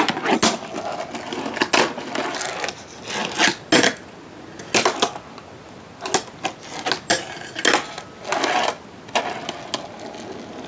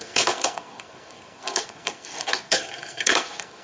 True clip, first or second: first